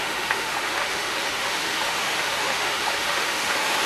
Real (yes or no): no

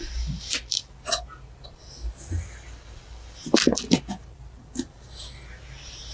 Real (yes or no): yes